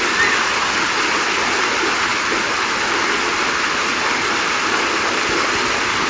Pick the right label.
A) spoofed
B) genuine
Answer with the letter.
B